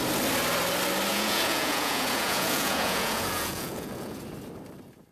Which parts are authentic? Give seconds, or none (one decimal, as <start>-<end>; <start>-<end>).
0.0-1.1; 4.2-5.1